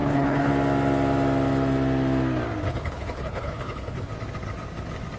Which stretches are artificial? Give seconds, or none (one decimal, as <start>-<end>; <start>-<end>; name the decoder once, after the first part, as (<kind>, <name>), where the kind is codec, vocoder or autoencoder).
0.0-0.5 (codec, HILCodec); 2.7-4.1